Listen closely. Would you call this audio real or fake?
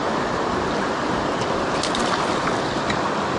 real